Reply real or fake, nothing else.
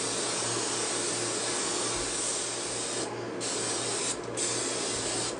real